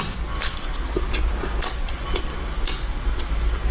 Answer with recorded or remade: recorded